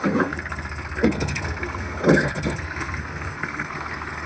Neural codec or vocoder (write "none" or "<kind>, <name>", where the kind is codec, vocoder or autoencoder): codec, SNAC